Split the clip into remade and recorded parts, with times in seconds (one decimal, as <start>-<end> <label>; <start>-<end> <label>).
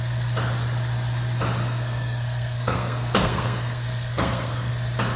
0.0-1.6 recorded; 1.6-4.7 remade; 4.7-5.2 recorded